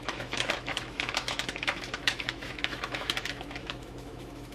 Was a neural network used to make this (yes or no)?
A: yes